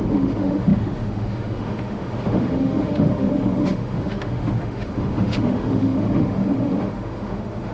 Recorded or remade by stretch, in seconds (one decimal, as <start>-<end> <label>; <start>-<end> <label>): 0.0-7.7 remade